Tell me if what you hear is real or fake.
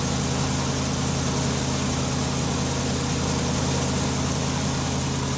real